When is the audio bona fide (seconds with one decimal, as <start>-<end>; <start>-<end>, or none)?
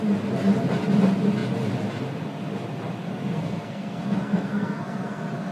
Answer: 0.0-3.1